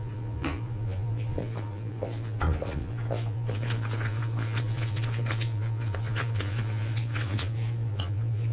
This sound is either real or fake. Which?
fake